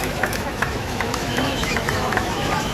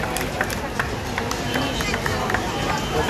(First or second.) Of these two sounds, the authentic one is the second